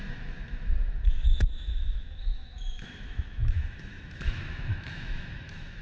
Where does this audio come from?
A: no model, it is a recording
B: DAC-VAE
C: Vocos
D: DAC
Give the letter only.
B